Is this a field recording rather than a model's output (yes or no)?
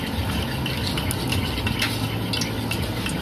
yes